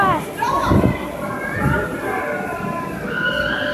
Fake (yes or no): no